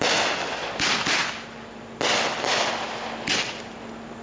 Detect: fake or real real